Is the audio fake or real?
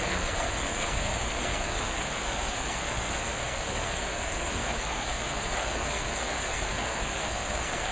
fake